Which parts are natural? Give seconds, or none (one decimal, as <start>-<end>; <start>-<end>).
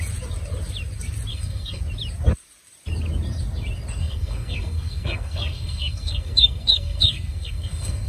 0.0-1.3; 1.8-4.0